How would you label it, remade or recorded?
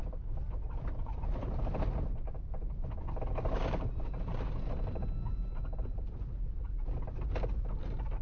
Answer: recorded